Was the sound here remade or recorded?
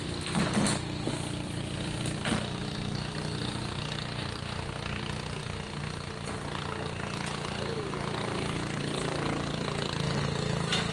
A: recorded